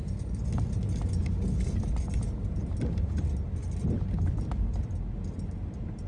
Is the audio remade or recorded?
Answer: recorded